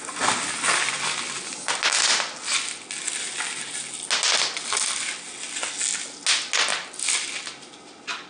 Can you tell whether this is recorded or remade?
recorded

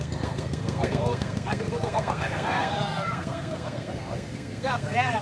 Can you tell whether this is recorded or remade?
remade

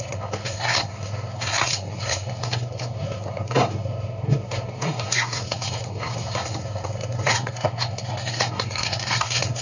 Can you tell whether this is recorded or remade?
remade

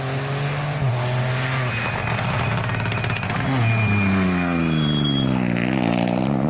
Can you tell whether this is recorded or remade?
recorded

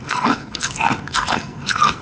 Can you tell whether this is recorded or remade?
remade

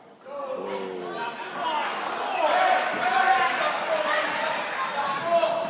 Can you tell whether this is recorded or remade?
recorded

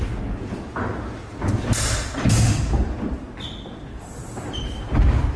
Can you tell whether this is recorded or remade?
recorded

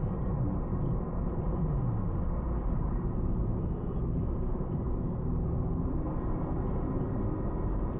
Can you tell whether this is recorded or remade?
recorded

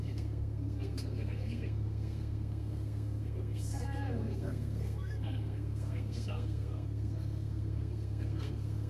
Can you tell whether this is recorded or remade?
remade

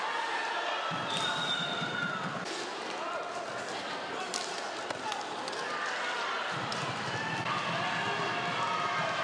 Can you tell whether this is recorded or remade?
recorded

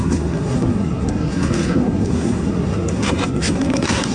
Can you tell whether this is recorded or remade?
remade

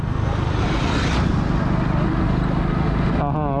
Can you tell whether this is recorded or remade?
recorded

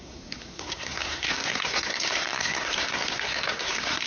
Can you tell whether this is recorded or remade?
remade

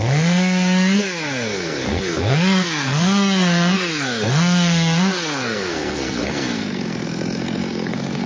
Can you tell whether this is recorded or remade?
remade